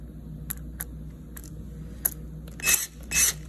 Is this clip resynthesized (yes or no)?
no